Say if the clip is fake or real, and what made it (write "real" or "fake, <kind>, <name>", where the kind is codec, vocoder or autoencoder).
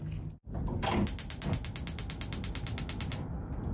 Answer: real